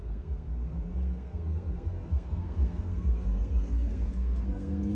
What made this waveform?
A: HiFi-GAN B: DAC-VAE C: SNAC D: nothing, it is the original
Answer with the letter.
C